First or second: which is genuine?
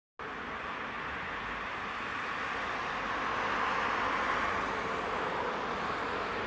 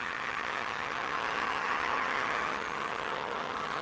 first